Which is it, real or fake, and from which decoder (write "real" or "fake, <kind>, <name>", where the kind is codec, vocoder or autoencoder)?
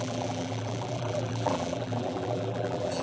fake, vocoder, BigVGAN v2